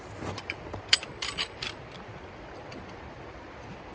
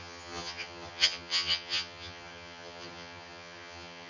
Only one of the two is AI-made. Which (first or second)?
second